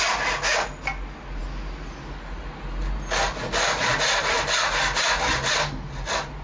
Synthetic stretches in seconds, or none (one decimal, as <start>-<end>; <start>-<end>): none